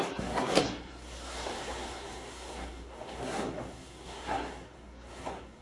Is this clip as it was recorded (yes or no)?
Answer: no